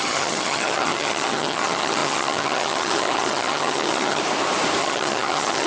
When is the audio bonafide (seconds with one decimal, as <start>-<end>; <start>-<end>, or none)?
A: 4.2-4.8